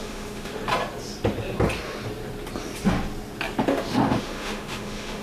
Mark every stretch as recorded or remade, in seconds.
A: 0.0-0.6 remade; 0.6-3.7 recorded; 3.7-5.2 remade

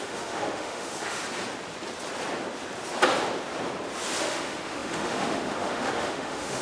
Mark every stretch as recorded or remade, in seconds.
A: 0.0-1.2 remade; 1.2-4.2 recorded; 4.2-6.6 remade

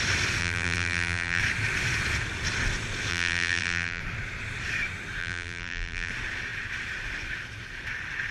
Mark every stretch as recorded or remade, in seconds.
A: 0.0-0.4 recorded; 0.4-1.4 remade; 1.4-3.1 recorded; 3.1-4.0 remade; 4.0-5.2 recorded; 5.2-6.1 remade; 6.1-8.3 recorded

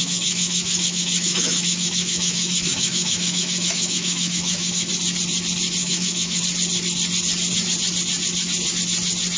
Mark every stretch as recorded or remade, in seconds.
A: 0.0-4.9 remade; 4.9-5.8 recorded; 5.8-6.4 remade; 6.4-9.4 recorded